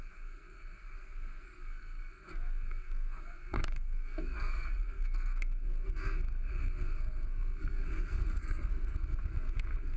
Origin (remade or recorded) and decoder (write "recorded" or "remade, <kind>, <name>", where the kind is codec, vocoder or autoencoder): remade, codec, SNAC